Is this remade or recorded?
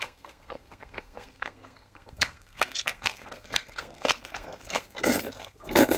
remade